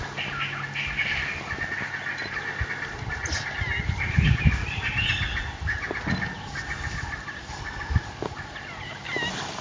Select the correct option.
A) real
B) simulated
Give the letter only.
A